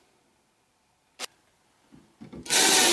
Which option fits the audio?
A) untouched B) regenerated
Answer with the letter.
A